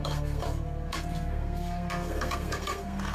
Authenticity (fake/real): fake